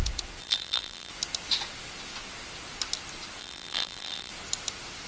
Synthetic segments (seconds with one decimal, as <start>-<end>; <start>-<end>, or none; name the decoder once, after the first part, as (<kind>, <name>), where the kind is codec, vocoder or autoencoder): 0.4-1.1 (vocoder, BigVGAN v2); 3.4-4.3